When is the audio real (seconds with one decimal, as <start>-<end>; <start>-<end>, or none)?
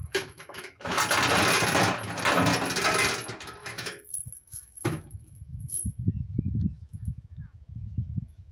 1.0-3.6